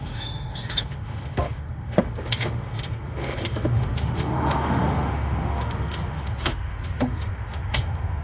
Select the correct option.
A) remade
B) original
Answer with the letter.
A